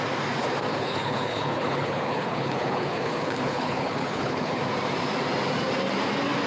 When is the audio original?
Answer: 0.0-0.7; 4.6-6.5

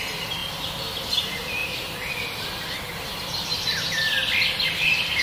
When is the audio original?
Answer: 0.0-1.6; 2.1-5.2

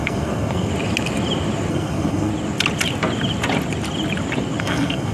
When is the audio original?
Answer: 0.7-1.7; 2.3-4.6

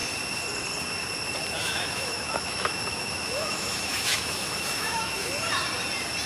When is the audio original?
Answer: 0.0-1.6; 5.4-6.3

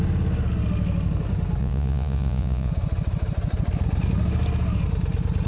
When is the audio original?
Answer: 0.0-1.6; 2.7-5.5

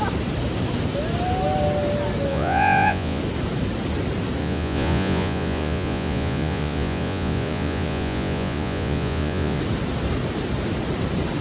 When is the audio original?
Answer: 0.0-2.3; 3.2-4.4; 9.6-11.4

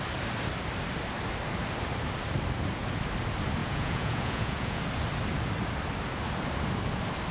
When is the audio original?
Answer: 0.0-3.6; 4.8-7.3